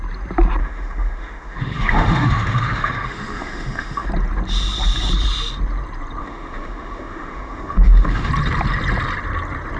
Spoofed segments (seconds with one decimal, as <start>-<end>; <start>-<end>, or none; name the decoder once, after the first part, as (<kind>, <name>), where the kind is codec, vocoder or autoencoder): 0.6-4.1 (autoencoder, DAC-VAE); 6.2-8.3